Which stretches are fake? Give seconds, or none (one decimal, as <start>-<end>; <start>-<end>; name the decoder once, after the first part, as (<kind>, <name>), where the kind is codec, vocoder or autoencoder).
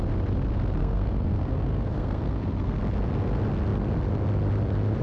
0.8-2.8 (codec, SNAC)